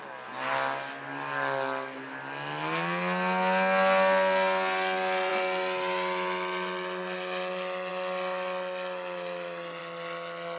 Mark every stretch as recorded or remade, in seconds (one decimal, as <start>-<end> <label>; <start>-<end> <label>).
0.0-10.6 recorded